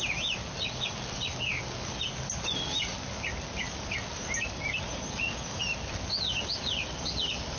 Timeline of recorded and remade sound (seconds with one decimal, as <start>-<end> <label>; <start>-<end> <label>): 0.0-7.6 recorded